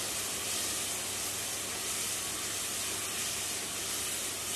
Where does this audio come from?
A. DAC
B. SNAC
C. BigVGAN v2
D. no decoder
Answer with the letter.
D